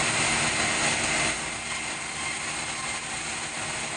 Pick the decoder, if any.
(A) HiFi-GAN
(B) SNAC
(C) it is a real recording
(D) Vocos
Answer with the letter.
C